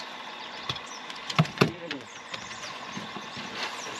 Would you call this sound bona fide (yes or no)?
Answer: no